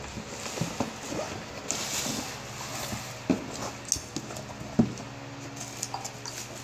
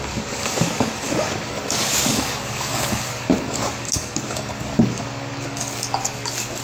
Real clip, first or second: first